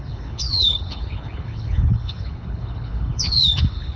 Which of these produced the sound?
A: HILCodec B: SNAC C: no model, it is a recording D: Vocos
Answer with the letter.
A